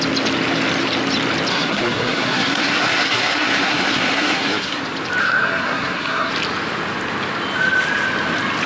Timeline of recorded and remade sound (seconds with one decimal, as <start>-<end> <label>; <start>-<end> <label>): 0.0-1.5 recorded; 1.5-4.8 remade; 4.8-5.2 recorded; 5.2-6.3 remade; 6.3-8.7 recorded

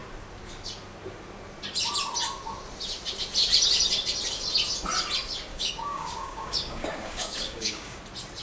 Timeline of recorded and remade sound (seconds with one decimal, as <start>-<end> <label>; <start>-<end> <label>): 0.0-5.5 recorded; 5.5-8.0 remade; 8.0-8.4 recorded

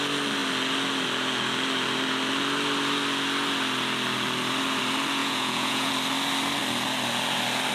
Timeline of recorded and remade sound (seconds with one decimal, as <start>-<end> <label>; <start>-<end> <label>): 0.0-5.2 recorded; 5.2-5.9 remade; 5.9-7.7 recorded

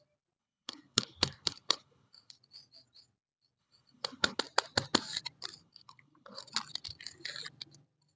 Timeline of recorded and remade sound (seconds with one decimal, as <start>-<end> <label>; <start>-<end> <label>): 0.0-0.4 recorded; 0.4-2.3 remade; 2.3-3.6 recorded; 3.6-4.4 remade; 4.4-5.6 recorded; 5.6-6.5 remade; 6.5-8.2 recorded

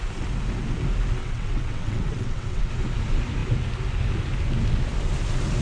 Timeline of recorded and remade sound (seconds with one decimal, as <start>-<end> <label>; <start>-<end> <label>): 0.0-1.2 recorded; 1.2-2.7 remade; 2.7-5.6 recorded